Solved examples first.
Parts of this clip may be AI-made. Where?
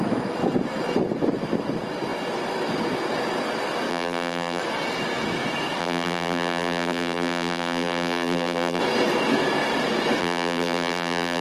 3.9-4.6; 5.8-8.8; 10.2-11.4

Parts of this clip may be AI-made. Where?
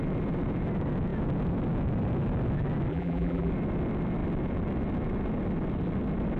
2.9-3.5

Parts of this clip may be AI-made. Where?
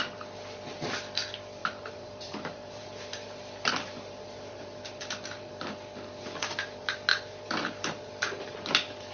1.6-5.5; 7.1-8.0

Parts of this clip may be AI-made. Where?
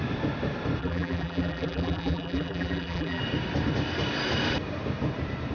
0.8-3.2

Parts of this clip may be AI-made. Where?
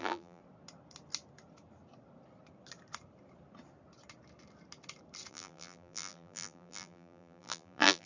0.0-0.4; 5.3-8.1